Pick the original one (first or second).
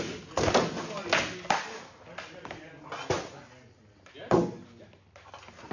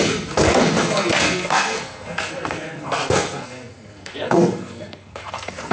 first